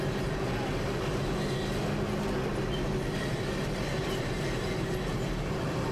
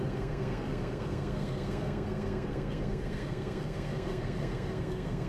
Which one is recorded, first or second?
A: first